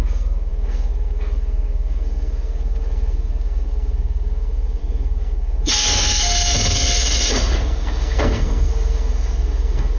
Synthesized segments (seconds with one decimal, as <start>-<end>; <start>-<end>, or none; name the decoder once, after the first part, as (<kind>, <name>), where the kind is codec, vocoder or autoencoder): 0.0-10.0 (codec, SNAC)